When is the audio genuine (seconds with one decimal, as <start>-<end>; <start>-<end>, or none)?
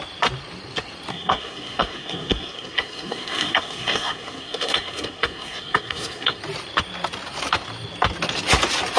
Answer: 0.0-1.1; 6.4-9.0